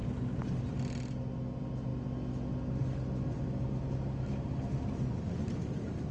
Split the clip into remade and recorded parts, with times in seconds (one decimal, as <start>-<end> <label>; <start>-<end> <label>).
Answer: 0.0-6.1 recorded